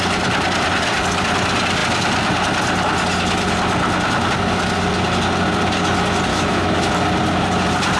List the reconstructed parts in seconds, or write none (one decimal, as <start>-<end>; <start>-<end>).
6.3-6.9